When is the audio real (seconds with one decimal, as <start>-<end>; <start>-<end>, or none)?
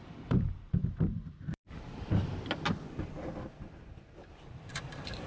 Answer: 0.8-1.5; 2.3-4.3